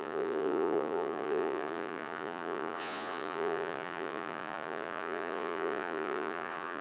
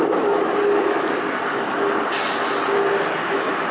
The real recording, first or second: second